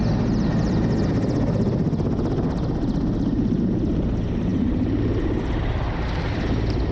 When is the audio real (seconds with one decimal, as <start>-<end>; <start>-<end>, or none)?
0.0-6.9